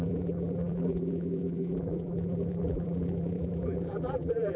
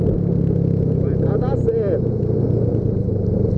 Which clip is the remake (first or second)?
first